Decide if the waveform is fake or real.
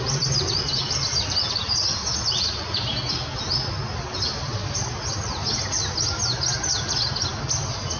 real